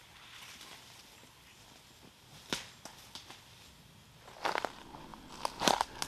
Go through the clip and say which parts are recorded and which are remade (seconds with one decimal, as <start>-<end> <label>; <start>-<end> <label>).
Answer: 0.0-6.1 recorded